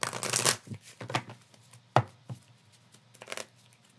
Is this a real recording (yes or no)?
yes